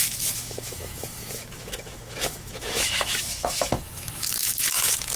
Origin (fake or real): fake